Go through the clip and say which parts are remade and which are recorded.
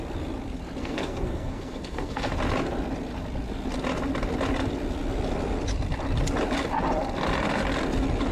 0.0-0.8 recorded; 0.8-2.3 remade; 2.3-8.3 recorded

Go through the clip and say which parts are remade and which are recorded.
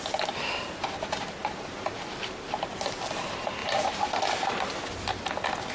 0.0-5.7 recorded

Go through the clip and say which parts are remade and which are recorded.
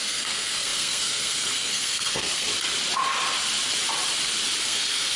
0.0-2.5 remade; 2.5-4.6 recorded; 4.6-5.2 remade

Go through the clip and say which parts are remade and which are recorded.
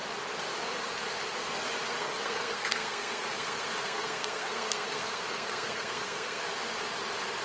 0.0-2.0 recorded; 2.0-6.4 remade; 6.4-7.4 recorded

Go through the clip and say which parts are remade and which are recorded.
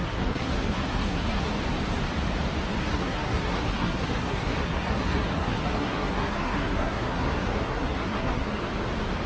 0.0-1.5 remade; 1.5-2.8 recorded; 2.8-8.6 remade; 8.6-9.3 recorded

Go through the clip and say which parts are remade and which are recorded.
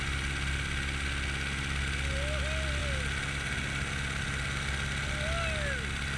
0.0-6.2 recorded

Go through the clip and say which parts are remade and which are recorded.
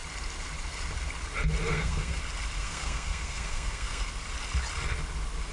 0.0-1.7 recorded; 1.7-2.2 remade; 2.2-2.6 recorded; 2.6-4.0 remade; 4.0-5.5 recorded